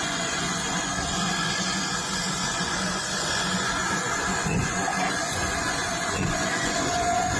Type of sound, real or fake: fake